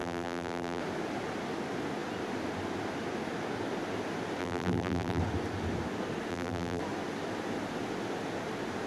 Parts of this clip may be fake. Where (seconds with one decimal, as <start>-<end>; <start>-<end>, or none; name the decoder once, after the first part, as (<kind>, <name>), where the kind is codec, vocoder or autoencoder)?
0.0-0.8 (vocoder, BigVGAN v2); 4.4-5.2; 6.3-6.8